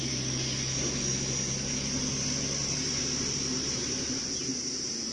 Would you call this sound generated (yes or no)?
no